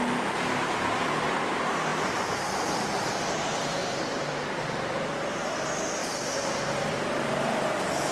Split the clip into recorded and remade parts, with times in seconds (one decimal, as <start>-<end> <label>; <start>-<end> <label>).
0.0-1.9 recorded; 1.9-2.8 remade; 2.8-3.8 recorded; 3.8-4.6 remade; 4.6-6.0 recorded; 6.0-6.9 remade; 6.9-8.1 recorded